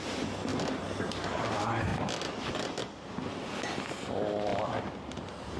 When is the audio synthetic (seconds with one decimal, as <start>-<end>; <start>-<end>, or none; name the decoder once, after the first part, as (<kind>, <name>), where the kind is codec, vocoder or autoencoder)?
0.0-0.5 (vocoder, BigVGAN v2); 1.0-1.9; 2.4-5.6